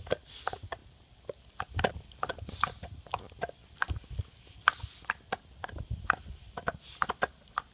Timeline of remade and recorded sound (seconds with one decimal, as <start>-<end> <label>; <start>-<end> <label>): 0.0-7.7 recorded